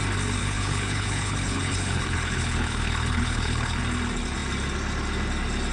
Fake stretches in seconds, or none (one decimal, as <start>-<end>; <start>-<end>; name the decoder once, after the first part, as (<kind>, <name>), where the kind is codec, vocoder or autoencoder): 0.4-3.8 (codec, HILCodec)